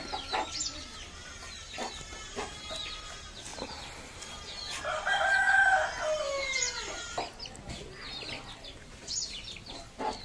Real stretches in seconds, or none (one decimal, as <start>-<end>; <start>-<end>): 0.0-10.2